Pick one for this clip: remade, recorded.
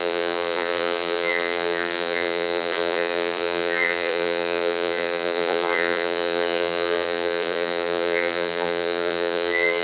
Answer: remade